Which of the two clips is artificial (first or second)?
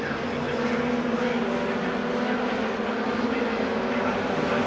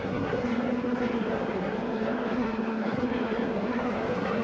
second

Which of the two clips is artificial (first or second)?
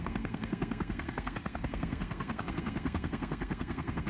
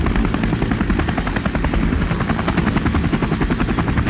first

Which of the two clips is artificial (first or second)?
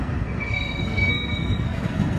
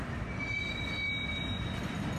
first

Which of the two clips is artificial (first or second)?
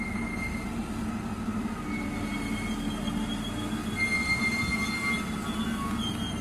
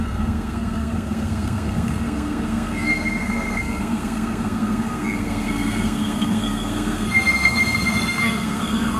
second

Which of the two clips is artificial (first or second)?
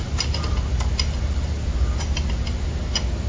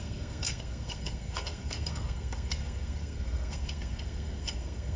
second